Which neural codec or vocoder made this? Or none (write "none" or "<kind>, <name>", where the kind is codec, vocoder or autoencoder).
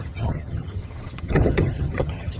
vocoder, HiFi-GAN